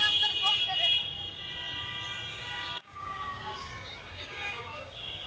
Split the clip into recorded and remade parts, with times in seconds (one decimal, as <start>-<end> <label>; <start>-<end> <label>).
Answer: 0.0-2.3 recorded; 2.3-5.3 remade